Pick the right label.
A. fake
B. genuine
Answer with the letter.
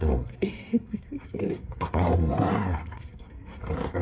A